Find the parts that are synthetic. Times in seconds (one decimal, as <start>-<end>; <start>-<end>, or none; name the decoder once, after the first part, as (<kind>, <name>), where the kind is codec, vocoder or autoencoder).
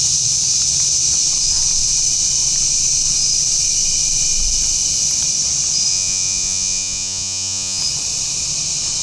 5.9-7.8 (vocoder, Vocos)